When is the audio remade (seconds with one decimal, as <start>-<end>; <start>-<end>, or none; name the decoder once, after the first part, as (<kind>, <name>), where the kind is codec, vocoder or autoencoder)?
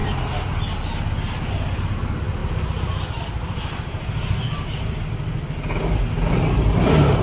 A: none